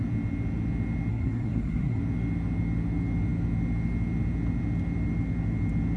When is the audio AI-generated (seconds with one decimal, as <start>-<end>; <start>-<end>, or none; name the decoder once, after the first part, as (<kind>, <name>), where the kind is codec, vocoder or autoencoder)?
1.1-2.0 (codec, SNAC)